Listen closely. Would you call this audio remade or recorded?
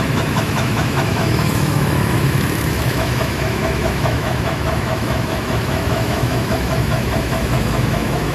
remade